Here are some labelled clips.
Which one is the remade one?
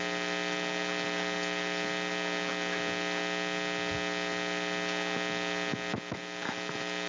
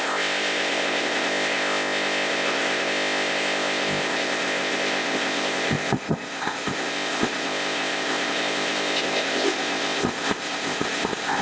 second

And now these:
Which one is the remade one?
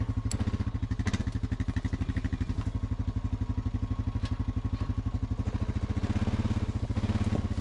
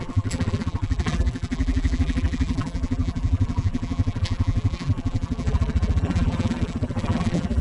second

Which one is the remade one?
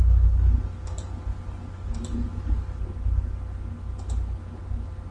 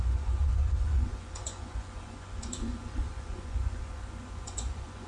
second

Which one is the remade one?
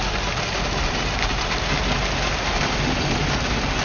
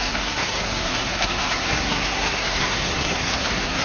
second